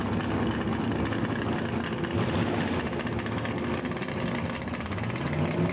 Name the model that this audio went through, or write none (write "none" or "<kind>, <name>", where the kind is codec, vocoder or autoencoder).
none